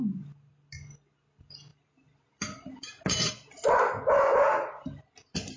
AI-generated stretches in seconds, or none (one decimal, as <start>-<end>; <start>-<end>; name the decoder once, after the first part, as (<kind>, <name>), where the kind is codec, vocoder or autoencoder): 1.7-3.3 (vocoder, BigVGAN v2)